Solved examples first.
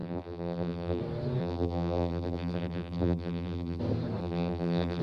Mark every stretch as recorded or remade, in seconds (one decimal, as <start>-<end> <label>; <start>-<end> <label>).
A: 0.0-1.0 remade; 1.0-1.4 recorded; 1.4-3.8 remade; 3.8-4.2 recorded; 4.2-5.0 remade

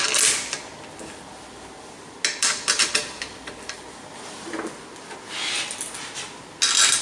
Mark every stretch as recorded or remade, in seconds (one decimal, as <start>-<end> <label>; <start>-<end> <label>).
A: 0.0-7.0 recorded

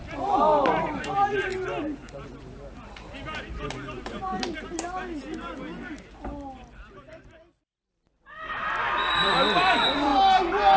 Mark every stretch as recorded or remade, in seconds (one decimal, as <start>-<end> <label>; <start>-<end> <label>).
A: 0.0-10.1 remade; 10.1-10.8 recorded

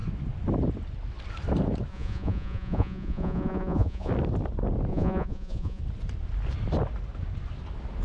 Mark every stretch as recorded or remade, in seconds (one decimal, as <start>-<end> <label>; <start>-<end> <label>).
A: 0.0-1.9 recorded; 1.9-4.1 remade; 4.1-4.9 recorded; 4.9-5.8 remade; 5.8-8.0 recorded

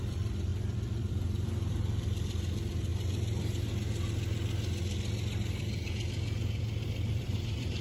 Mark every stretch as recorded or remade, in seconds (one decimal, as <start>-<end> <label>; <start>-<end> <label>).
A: 0.0-2.9 remade; 2.9-7.1 recorded; 7.1-7.8 remade

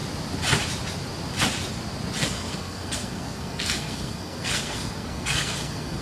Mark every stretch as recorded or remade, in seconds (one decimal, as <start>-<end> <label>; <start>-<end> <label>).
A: 0.0-2.2 recorded; 2.2-6.0 remade

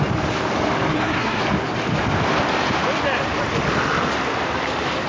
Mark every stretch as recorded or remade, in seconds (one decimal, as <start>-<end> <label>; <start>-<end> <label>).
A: 0.0-0.9 recorded; 0.9-1.4 remade; 1.4-5.1 recorded

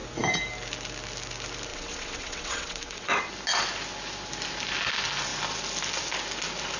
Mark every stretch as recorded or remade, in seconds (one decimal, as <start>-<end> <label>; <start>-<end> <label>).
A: 0.0-1.7 recorded; 1.7-3.3 remade; 3.3-6.8 recorded